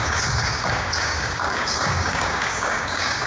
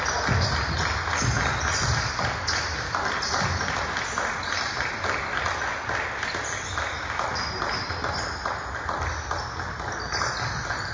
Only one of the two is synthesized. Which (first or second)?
first